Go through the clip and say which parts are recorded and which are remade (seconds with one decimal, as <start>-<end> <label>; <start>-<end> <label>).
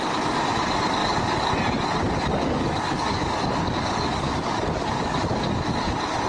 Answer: 0.0-1.0 recorded; 1.0-1.5 remade; 1.5-2.3 recorded; 2.3-5.2 remade; 5.2-6.3 recorded